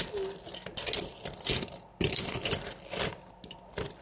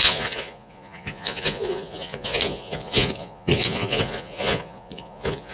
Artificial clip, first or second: second